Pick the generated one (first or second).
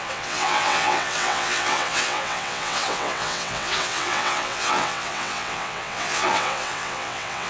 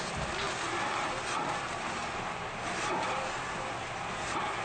first